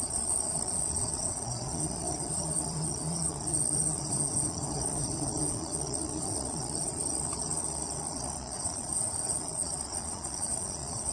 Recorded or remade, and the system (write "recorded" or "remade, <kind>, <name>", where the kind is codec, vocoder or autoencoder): remade, vocoder, Vocos